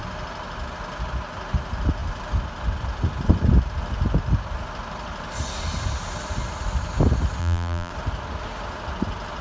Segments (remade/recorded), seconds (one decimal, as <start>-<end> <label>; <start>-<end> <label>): 0.0-7.4 recorded; 7.4-7.9 remade; 7.9-9.4 recorded

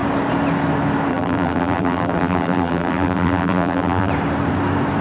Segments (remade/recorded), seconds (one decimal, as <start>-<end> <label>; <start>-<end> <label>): 0.0-1.1 recorded; 1.1-4.1 remade; 4.1-5.0 recorded

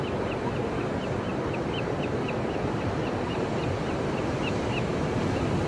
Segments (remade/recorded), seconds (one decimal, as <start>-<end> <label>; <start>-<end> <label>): 0.0-1.3 recorded; 1.3-3.7 remade; 3.7-5.7 recorded

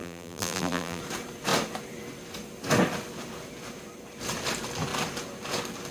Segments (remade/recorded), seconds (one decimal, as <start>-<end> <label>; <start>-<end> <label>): 0.0-1.0 remade; 1.0-5.9 recorded

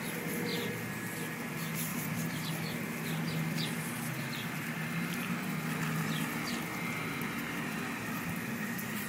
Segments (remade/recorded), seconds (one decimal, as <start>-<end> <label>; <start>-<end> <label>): 0.0-1.9 recorded; 1.9-2.5 remade; 2.5-9.1 recorded

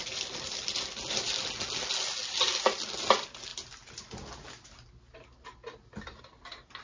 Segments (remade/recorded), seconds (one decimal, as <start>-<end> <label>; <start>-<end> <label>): 0.0-6.8 recorded

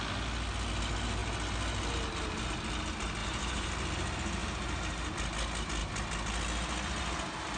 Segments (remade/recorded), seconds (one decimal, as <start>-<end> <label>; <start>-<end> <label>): 0.0-3.2 recorded; 3.2-3.7 remade; 3.7-4.4 recorded; 4.4-5.1 remade; 5.1-7.6 recorded

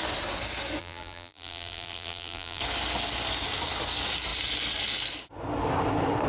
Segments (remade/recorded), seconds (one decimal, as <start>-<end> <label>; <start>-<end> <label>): 0.0-0.8 recorded; 0.8-2.6 remade; 2.6-6.3 recorded